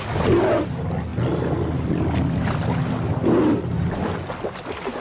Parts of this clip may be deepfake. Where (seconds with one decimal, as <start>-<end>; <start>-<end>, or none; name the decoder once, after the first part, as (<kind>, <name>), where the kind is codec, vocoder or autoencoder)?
none